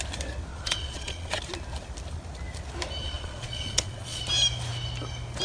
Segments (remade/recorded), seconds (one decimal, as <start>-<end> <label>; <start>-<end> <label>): 0.0-0.5 recorded; 0.5-1.4 remade; 1.4-3.0 recorded; 3.0-4.2 remade; 4.2-5.4 recorded